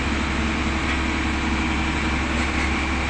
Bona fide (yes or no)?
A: yes